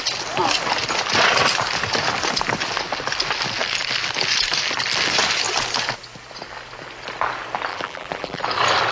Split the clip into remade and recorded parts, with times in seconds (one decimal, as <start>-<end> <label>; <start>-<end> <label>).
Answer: 0.0-7.7 recorded; 7.7-8.4 remade; 8.4-8.9 recorded